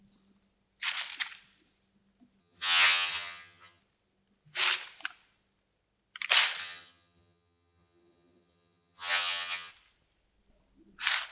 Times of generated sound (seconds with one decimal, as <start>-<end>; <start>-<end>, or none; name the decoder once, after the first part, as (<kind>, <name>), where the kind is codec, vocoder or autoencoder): 2.4-3.8 (vocoder, HiFi-GAN); 6.6-9.7